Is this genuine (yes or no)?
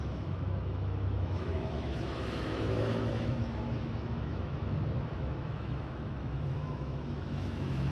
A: no